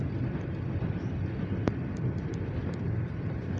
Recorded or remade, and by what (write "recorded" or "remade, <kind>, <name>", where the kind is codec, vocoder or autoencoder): recorded